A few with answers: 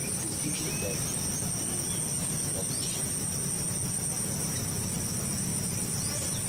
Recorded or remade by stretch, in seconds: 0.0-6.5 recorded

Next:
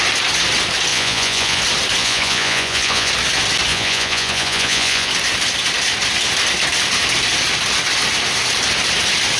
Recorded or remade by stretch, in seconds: 0.0-0.9 recorded; 0.9-1.6 remade; 1.6-2.0 recorded; 2.0-3.1 remade; 3.1-3.7 recorded; 3.7-5.1 remade; 5.1-9.4 recorded

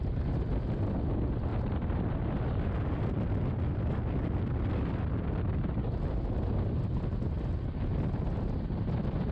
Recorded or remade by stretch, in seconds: 0.0-9.3 recorded

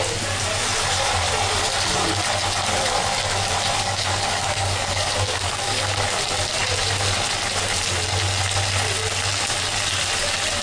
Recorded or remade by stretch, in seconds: 0.0-3.8 recorded; 3.8-5.9 remade; 5.9-10.6 recorded

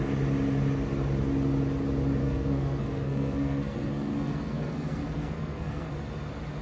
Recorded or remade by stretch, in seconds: 0.0-2.2 recorded; 2.2-5.9 remade; 5.9-6.6 recorded

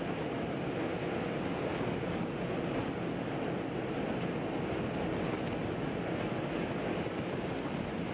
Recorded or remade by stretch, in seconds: 0.0-8.1 recorded

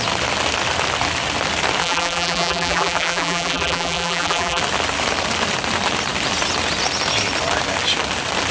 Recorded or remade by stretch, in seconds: 0.0-1.8 recorded; 1.8-4.6 remade; 4.6-8.5 recorded